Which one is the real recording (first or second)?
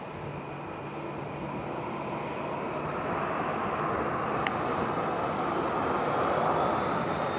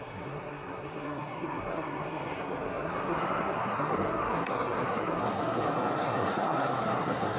first